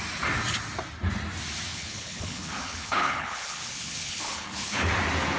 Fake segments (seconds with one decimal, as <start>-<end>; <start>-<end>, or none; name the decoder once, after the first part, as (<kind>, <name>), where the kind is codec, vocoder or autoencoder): 1.7-4.9 (codec, HILCodec)